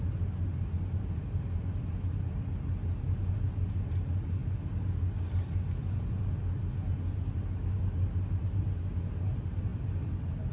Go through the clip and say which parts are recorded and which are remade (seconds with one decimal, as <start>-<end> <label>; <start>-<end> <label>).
0.0-10.5 recorded